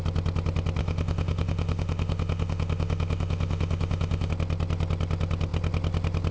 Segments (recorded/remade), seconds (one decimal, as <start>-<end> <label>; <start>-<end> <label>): 0.0-0.8 recorded; 0.8-4.3 remade; 4.3-6.3 recorded